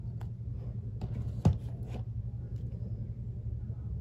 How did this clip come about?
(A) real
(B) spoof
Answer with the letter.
A